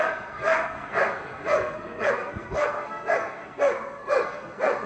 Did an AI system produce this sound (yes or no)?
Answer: yes